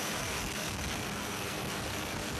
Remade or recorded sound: remade